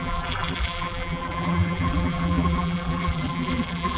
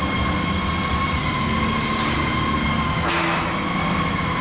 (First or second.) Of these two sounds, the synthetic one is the first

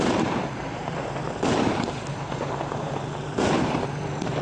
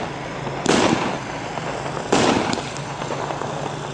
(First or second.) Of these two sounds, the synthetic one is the first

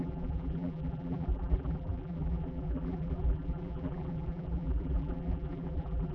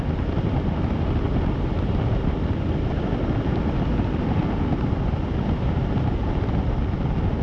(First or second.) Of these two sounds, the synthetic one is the first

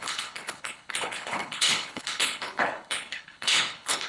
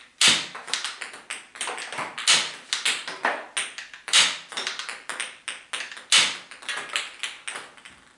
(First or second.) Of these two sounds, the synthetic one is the first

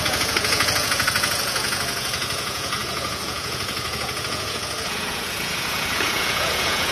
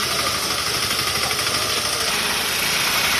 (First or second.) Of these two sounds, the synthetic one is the first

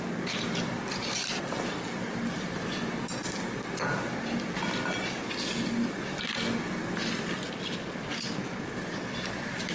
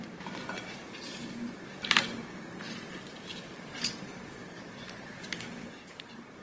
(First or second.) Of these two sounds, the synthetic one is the second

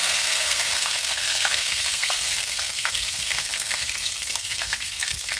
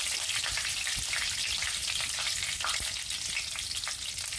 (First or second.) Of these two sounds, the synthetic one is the first